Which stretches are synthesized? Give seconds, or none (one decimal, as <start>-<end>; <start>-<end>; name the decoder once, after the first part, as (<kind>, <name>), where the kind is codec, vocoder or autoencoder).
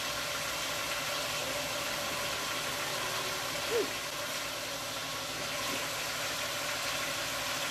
none